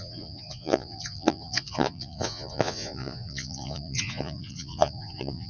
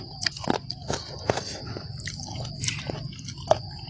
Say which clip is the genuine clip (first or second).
second